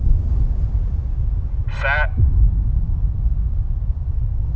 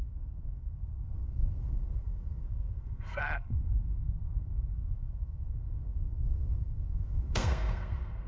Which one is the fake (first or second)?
second